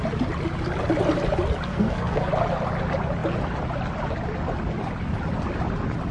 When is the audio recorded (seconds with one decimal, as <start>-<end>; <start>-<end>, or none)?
0.0-1.7; 2.3-6.1